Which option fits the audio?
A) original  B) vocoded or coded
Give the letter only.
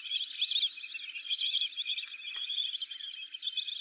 A